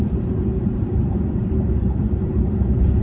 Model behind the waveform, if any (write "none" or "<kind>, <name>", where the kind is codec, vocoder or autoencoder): vocoder, BigVGAN v2